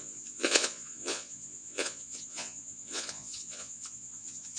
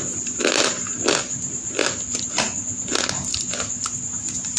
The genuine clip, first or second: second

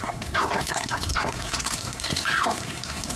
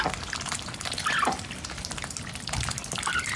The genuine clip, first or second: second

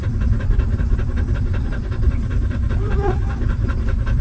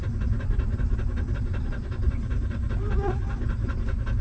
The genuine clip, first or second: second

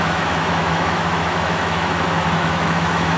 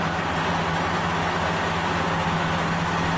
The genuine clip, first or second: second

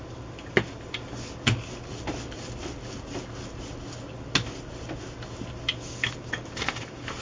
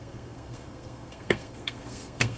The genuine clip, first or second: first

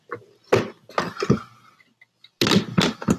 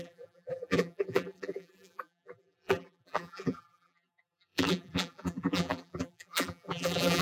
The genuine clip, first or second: first